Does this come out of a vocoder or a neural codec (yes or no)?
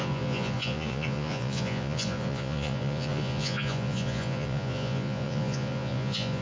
yes